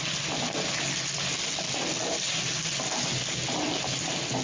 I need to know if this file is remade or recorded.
recorded